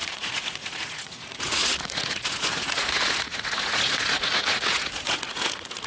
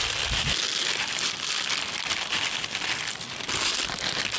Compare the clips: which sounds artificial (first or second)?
first